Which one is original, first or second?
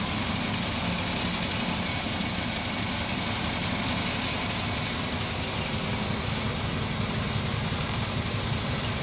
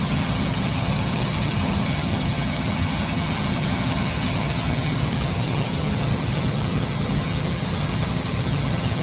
first